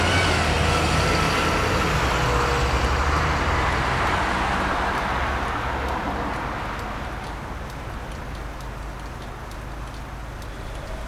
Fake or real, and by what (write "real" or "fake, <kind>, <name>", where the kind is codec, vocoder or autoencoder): real